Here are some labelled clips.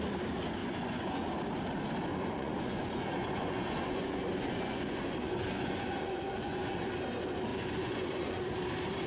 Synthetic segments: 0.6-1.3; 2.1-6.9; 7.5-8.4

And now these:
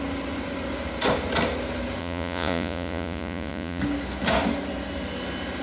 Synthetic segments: 2.0-3.8

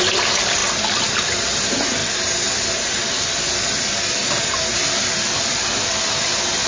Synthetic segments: none

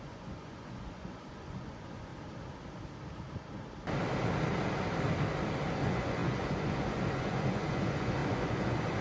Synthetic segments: 0.0-2.1; 5.7-9.0

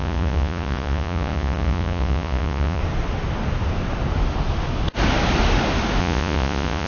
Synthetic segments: 0.0-2.8; 6.0-6.9